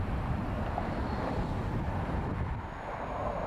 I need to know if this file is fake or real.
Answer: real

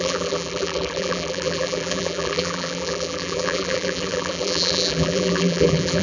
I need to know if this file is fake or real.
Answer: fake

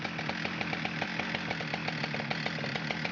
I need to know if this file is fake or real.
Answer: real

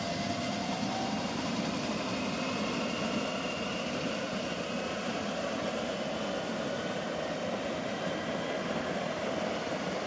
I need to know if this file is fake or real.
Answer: real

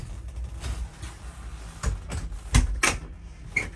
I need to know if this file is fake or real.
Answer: real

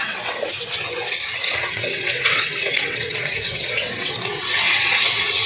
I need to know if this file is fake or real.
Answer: fake